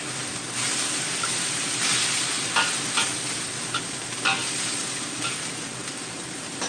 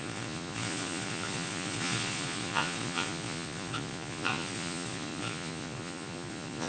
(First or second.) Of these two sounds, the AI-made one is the second